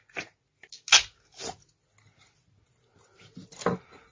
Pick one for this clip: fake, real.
real